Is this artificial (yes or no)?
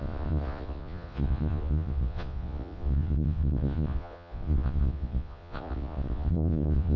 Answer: yes